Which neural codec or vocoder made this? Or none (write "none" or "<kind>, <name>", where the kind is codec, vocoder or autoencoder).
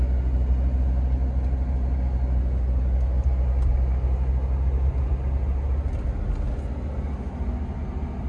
none